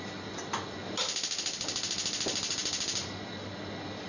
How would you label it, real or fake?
real